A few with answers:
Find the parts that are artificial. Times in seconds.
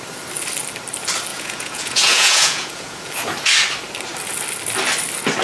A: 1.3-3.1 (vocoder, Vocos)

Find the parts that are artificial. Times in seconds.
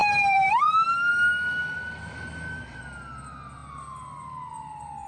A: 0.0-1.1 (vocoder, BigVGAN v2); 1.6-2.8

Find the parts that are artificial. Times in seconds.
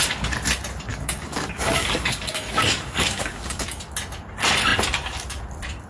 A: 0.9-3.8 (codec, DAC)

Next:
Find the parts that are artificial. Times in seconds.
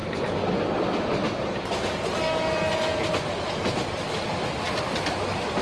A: none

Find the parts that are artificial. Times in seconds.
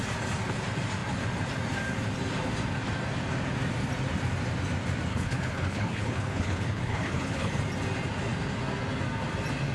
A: 5.1-7.5 (codec, HILCodec)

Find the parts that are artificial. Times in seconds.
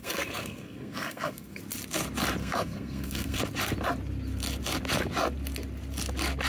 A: 0.0-1.6 (codec, SNAC); 2.4-3.4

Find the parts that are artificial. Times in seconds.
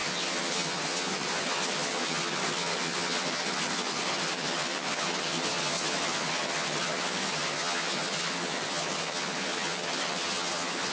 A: 0.0-10.9 (vocoder, HiFi-GAN)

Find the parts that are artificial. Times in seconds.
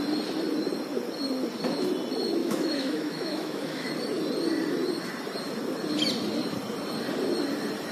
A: 2.4-3.9 (autoencoder, DAC-VAE)